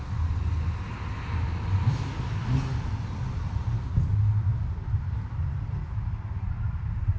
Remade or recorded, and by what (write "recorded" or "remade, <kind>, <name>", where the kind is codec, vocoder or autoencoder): recorded